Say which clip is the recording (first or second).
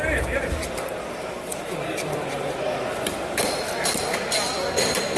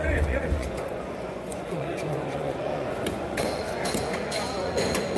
first